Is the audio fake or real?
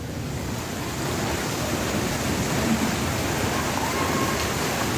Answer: fake